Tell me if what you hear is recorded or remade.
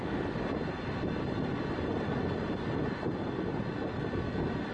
recorded